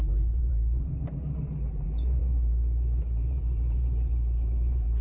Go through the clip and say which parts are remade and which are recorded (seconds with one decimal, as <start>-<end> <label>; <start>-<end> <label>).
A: 0.0-2.2 remade; 2.2-3.0 recorded; 3.0-5.0 remade